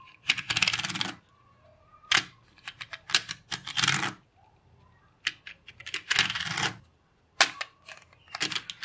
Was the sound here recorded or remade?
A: recorded